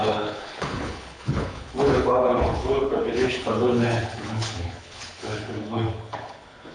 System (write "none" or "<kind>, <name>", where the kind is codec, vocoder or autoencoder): codec, HILCodec